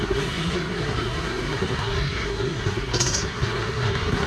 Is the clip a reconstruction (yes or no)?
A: yes